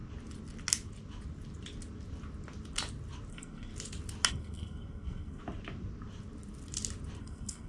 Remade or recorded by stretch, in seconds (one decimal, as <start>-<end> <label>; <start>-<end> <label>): 0.0-3.3 recorded; 3.3-3.7 remade; 3.7-4.3 recorded; 4.3-5.4 remade; 5.4-7.2 recorded; 7.2-7.7 remade